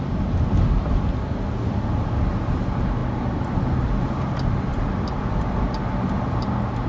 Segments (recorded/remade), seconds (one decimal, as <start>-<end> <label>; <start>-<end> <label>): 0.0-6.9 recorded